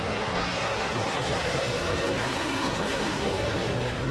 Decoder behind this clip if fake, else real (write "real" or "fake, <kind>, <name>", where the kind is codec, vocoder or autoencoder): fake, codec, SNAC